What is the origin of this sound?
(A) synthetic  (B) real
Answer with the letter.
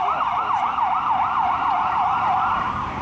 B